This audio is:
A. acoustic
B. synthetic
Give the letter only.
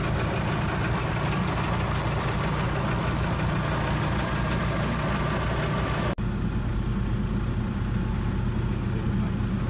A